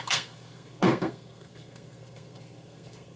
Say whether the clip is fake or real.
fake